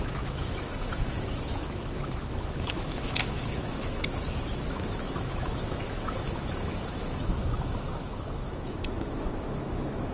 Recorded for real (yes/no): no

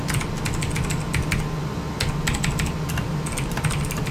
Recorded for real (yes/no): yes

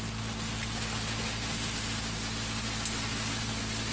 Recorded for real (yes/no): yes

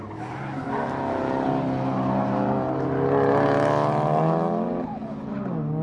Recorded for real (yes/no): yes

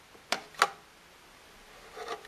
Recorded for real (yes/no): yes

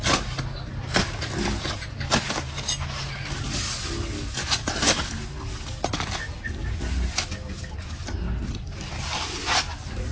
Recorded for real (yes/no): yes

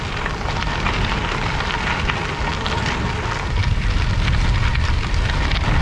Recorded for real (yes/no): yes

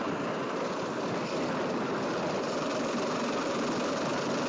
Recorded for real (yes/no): yes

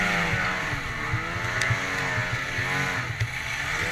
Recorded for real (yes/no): yes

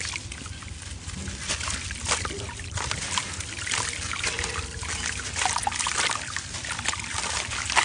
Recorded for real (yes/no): yes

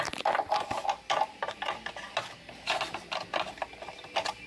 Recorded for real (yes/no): yes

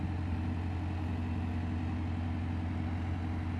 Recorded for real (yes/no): yes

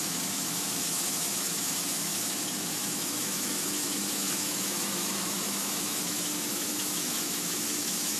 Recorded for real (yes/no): no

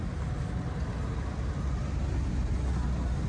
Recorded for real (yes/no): yes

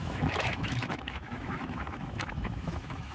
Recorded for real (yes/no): no